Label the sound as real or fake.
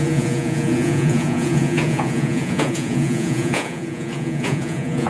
fake